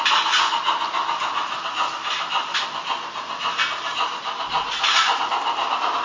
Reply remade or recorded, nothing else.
recorded